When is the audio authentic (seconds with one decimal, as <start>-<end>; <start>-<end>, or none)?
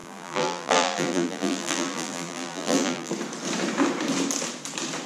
3.1-5.1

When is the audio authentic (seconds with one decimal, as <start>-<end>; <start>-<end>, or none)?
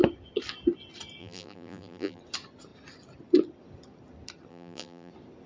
0.0-1.2; 2.2-4.5; 5.1-5.5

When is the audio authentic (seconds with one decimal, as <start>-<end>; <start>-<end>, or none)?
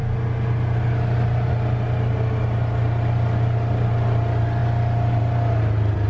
0.0-6.1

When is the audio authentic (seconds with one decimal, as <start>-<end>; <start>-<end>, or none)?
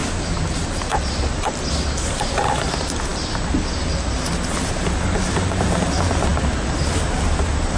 0.0-7.8